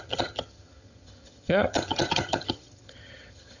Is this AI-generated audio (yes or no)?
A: yes